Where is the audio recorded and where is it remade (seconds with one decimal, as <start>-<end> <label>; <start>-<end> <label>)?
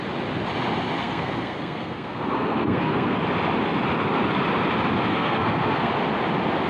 0.0-1.0 recorded; 1.0-3.2 remade; 3.2-5.1 recorded; 5.1-5.9 remade; 5.9-6.7 recorded